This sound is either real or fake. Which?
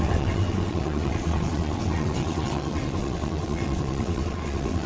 fake